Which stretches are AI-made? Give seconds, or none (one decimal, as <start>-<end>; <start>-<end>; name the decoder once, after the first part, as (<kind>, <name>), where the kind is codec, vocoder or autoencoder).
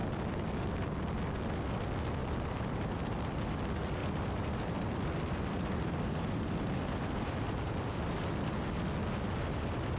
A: 2.2-2.8 (vocoder, BigVGAN v2); 4.0-7.4